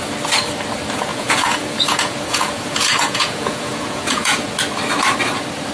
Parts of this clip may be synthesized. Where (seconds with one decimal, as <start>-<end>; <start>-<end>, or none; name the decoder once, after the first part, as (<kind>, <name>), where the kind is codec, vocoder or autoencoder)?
1.1-4.5 (vocoder, Vocos)